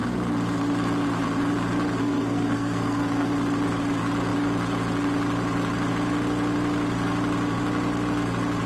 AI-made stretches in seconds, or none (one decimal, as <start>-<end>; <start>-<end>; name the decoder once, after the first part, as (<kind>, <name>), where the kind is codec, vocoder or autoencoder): 2.0-3.3 (codec, SNAC)